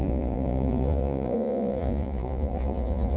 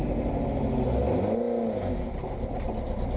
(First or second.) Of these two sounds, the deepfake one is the first